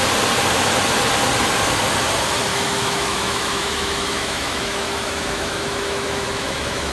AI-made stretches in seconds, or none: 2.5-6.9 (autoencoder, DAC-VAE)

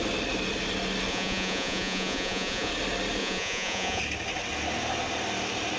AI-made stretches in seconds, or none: 1.1-2.7 (vocoder, Vocos); 3.2-4.0

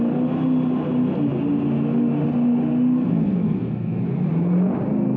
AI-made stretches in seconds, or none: 3.1-4.0 (codec, SNAC)

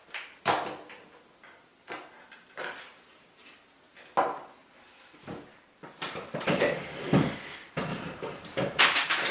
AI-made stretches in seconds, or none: 4.6-7.1 (vocoder, BigVGAN v2); 7.9-8.8

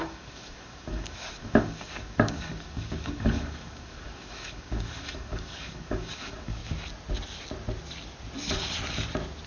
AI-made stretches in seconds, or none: 0.0-6.6 (codec, DAC)

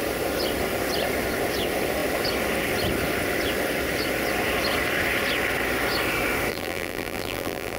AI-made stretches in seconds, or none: 6.5-7.8 (vocoder, BigVGAN v2)

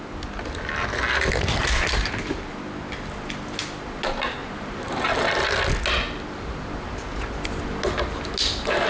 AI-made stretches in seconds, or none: 4.4-5.2 (vocoder, BigVGAN v2)

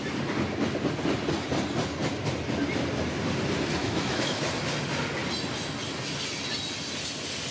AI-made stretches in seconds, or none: 3.8-4.4 (autoencoder, DAC-VAE)